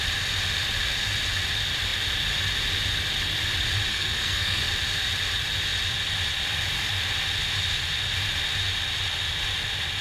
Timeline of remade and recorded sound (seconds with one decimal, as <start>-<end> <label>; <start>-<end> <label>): 0.0-3.9 recorded; 3.9-4.6 remade; 4.6-10.0 recorded